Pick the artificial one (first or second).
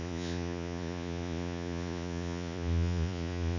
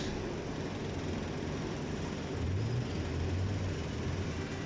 first